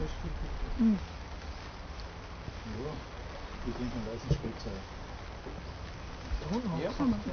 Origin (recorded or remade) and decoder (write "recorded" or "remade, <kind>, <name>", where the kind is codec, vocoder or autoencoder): recorded